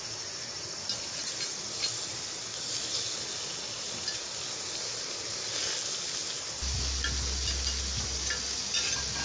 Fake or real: real